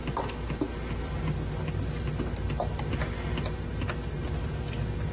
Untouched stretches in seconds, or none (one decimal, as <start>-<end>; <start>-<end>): 0.0-5.1